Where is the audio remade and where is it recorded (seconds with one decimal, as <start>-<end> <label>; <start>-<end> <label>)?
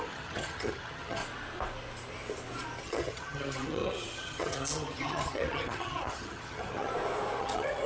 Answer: 0.0-1.2 remade; 1.2-2.8 recorded; 2.8-6.9 remade; 6.9-7.4 recorded; 7.4-7.9 remade